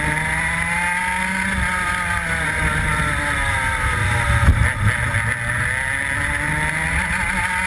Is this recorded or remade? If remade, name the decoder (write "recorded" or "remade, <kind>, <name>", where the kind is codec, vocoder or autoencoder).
recorded